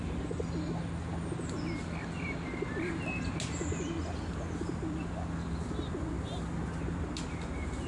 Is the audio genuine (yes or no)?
yes